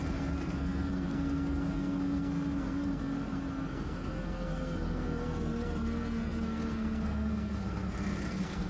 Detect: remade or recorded remade